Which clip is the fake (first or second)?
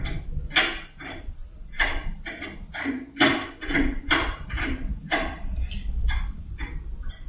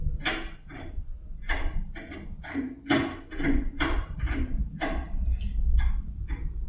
first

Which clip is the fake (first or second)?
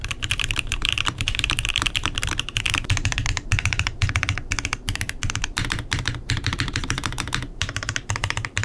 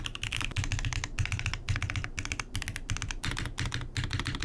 first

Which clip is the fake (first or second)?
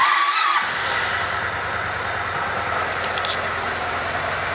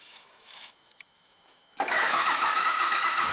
second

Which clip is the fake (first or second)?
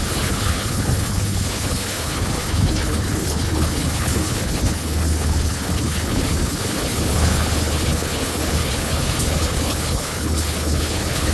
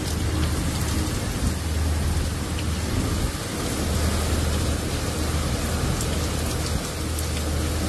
first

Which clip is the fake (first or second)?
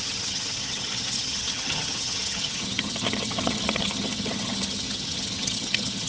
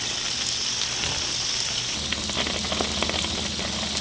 first